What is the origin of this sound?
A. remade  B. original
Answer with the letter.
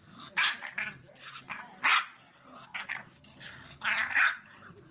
B